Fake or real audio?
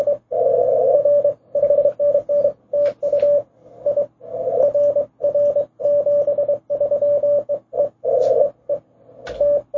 real